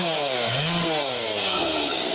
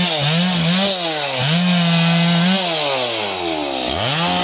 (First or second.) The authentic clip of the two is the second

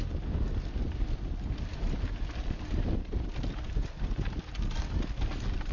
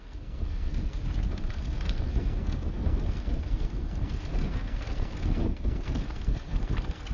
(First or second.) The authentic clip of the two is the first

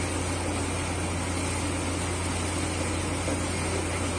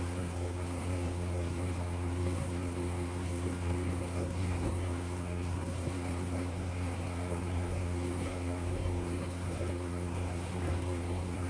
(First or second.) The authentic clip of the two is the first